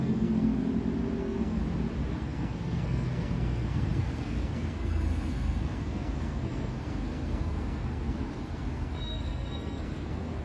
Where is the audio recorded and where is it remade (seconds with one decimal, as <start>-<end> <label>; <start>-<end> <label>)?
0.0-0.6 remade; 0.6-1.2 recorded; 1.2-1.6 remade; 1.6-2.1 recorded; 2.1-10.4 remade